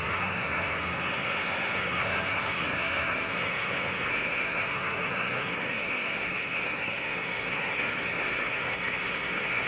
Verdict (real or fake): fake